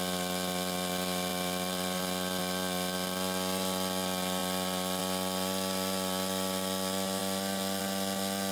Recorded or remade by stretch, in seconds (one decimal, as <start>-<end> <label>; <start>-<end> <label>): 0.0-1.3 recorded; 1.3-2.4 remade; 2.4-8.5 recorded